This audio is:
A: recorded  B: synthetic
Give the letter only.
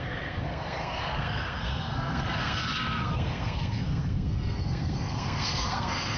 B